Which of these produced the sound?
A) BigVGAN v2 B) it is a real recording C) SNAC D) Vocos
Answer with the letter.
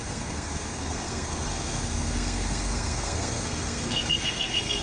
C